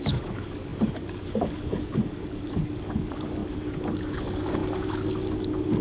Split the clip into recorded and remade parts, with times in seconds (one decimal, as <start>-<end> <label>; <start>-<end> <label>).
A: 0.0-5.8 remade